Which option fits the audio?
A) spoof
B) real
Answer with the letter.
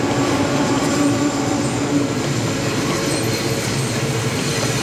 A